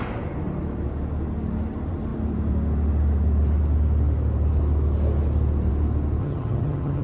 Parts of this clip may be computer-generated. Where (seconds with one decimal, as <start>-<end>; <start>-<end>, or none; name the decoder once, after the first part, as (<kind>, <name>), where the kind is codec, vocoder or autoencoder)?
6.2-7.0 (vocoder, HiFi-GAN)